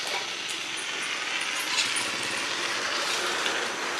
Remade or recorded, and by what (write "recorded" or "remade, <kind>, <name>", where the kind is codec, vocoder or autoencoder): recorded